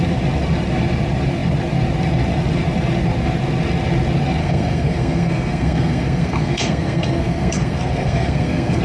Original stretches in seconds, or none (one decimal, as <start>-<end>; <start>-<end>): 0.0-4.4